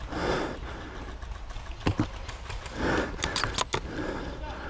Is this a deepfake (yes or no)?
no